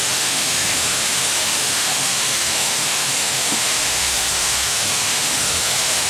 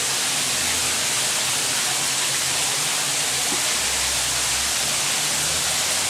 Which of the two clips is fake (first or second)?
first